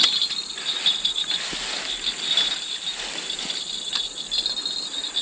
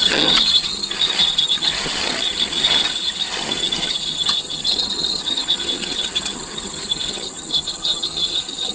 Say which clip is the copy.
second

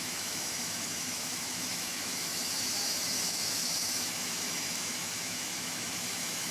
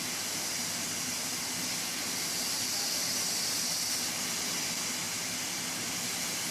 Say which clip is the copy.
first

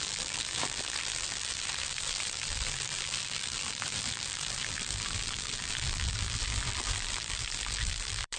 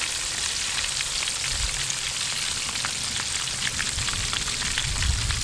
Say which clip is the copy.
first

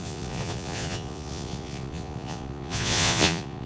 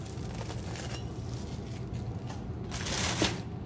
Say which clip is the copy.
first